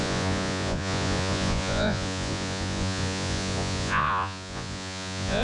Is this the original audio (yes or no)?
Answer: no